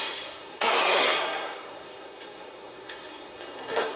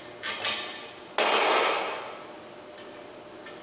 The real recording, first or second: second